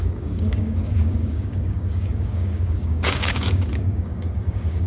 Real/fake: fake